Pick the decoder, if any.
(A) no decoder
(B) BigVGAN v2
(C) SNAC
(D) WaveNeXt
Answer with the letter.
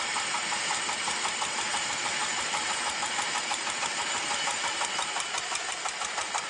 B